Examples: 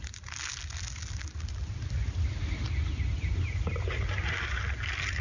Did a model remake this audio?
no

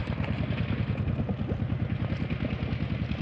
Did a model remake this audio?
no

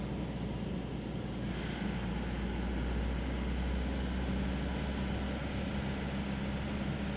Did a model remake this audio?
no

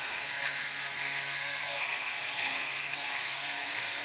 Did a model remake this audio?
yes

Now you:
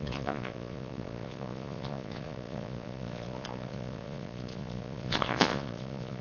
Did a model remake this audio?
yes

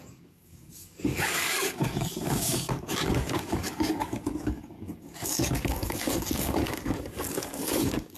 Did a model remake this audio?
yes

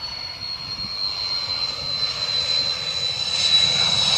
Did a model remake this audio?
no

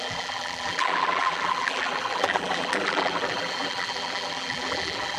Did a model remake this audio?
yes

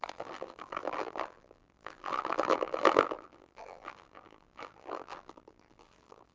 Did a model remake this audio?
yes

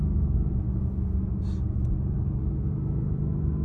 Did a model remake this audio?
no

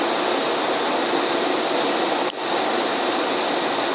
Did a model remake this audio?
no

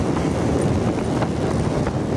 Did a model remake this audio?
no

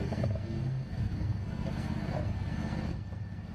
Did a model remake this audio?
yes